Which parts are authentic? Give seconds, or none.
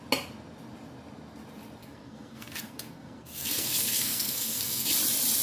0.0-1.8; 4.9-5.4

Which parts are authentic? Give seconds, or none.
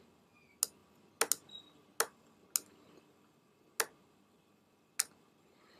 0.0-5.8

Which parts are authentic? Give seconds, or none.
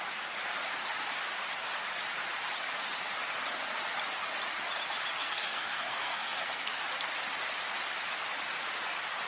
0.0-5.2; 6.7-9.3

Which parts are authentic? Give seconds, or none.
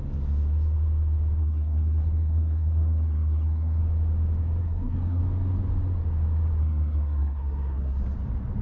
0.0-1.4; 3.8-4.6; 5.2-6.6; 8.0-8.6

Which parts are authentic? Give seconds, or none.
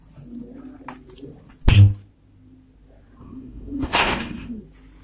0.0-3.2; 4.6-5.0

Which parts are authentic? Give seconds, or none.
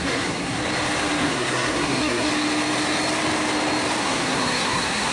0.6-1.2; 2.3-4.0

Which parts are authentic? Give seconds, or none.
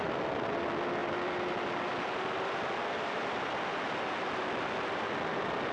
0.0-5.7